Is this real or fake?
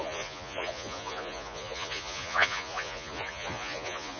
fake